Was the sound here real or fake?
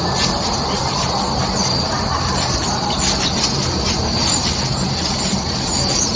real